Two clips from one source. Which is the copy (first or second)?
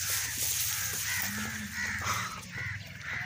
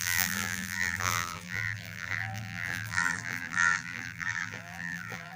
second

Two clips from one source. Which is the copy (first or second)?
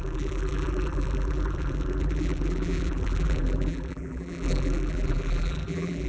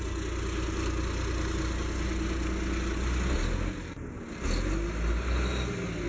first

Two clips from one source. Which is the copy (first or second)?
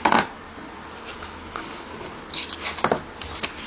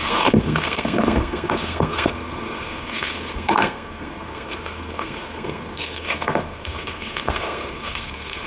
second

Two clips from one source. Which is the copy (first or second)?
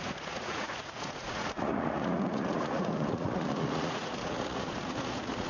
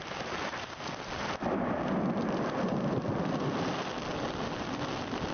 first